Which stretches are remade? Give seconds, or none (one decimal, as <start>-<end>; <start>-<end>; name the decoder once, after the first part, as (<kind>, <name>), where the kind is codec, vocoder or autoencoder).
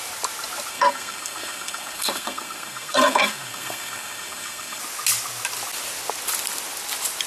0.7-4.8 (codec, SNAC)